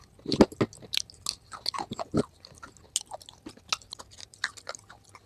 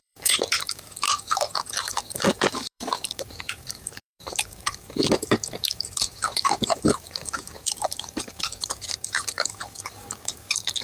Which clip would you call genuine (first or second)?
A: first